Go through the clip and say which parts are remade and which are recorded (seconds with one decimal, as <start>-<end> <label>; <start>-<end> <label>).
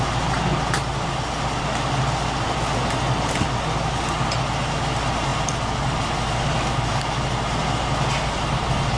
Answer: 0.0-9.0 recorded